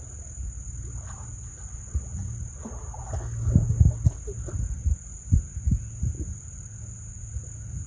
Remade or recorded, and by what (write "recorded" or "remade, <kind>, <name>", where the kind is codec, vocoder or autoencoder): recorded